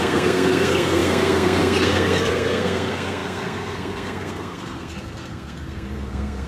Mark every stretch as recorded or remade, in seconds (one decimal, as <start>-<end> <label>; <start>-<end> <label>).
0.0-6.5 remade